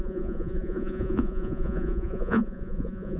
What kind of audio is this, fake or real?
fake